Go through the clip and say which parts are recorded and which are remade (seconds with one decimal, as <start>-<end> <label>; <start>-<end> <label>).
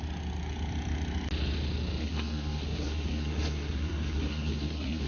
0.0-2.0 recorded; 2.0-5.1 remade